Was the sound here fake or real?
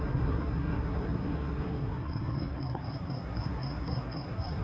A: fake